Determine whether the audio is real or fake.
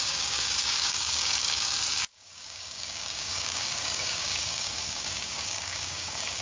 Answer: fake